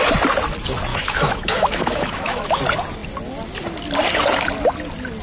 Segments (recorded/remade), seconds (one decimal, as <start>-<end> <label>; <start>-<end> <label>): 0.0-0.9 recorded; 0.9-2.6 remade; 2.6-5.2 recorded